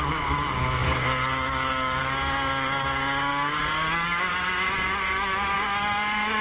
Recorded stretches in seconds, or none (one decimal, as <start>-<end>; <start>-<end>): none